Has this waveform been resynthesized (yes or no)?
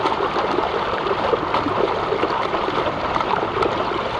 yes